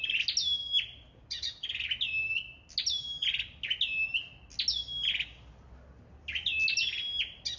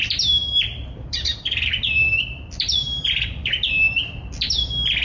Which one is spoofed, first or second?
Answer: second